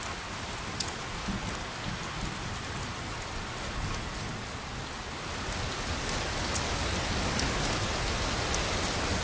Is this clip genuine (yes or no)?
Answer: yes